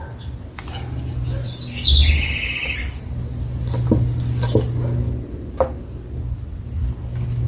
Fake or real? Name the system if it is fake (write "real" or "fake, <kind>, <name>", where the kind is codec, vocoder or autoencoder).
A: real